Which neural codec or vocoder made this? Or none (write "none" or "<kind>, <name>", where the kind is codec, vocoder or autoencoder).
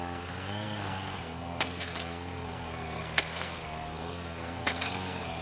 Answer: codec, SNAC